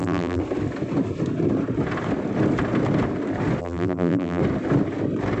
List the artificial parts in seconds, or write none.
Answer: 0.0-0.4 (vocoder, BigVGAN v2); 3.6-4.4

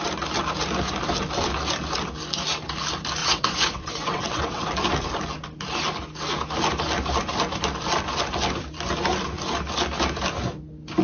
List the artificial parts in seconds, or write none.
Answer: 3.2-4.7 (vocoder, WaveNeXt)

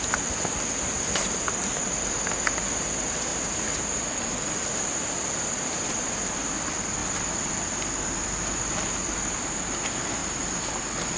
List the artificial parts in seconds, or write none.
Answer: 3.3-4.2 (vocoder, BigVGAN v2); 7.0-9.6; 10.2-11.2

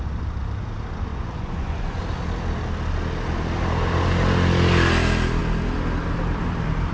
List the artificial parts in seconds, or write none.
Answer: 1.1-2.0 (vocoder, Vocos)

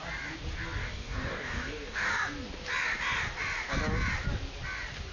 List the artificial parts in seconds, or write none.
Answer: 0.8-2.1 (codec, DAC)

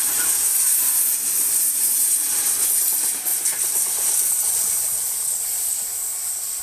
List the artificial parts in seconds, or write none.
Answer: 3.3-6.6 (vocoder, BigVGAN v2)

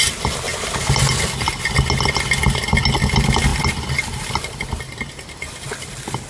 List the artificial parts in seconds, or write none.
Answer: none

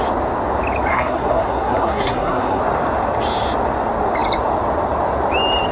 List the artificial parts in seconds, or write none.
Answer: 0.9-2.6 (codec, SNAC)